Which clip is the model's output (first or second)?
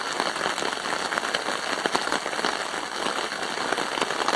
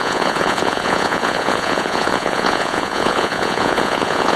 second